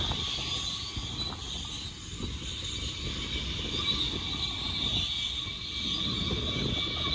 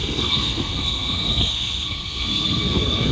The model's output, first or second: second